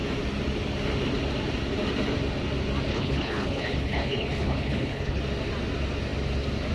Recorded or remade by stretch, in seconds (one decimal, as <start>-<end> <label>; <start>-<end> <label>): 0.0-2.9 recorded; 2.9-5.2 remade; 5.2-6.7 recorded